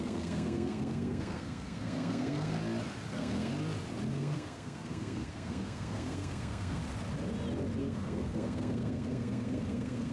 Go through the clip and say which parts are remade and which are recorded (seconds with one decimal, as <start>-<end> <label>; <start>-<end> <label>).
0.0-2.6 remade; 2.6-3.1 recorded; 3.1-3.5 remade; 3.5-4.1 recorded; 4.1-6.8 remade; 6.8-7.8 recorded; 7.8-10.1 remade